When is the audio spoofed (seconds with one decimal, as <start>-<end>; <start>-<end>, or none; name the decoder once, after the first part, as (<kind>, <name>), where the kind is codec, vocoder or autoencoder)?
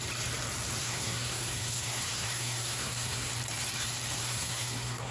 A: 0.8-3.3 (codec, SNAC); 4.2-5.1